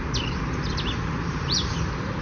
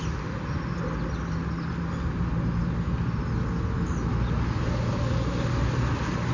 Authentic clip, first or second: second